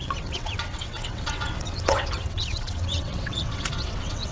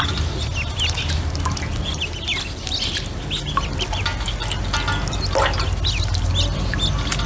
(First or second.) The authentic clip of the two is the second